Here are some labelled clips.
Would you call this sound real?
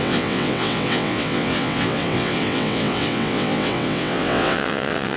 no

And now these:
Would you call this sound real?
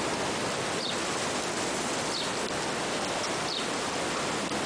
yes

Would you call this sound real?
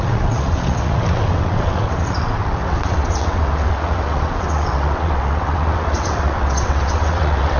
no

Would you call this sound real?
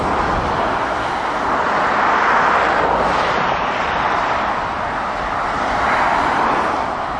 yes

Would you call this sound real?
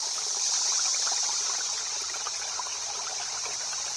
yes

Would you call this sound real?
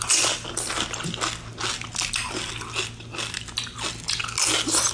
yes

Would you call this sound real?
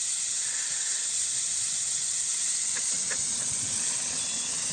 no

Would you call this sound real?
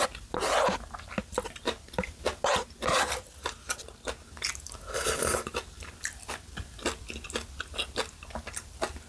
yes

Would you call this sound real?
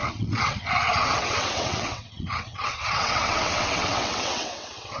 no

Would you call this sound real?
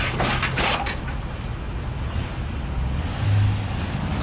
yes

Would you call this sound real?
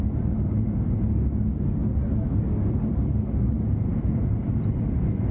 yes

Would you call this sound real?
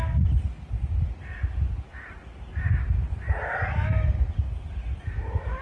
yes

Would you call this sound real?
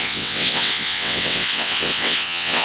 no